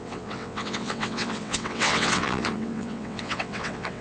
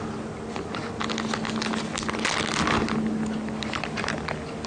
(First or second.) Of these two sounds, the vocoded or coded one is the first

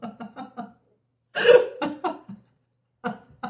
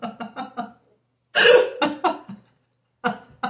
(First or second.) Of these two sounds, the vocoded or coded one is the first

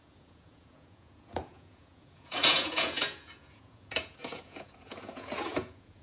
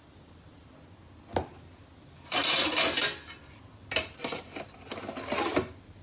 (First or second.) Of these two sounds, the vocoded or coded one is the first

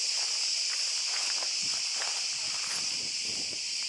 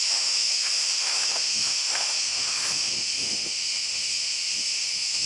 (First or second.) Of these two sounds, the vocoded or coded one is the second